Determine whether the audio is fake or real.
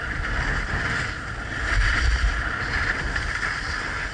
real